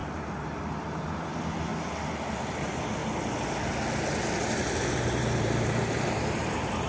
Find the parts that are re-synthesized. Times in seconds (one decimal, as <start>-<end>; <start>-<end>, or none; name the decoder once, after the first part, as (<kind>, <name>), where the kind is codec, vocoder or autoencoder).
0.0-1.7 (vocoder, BigVGAN v2); 2.5-3.0; 4.9-6.9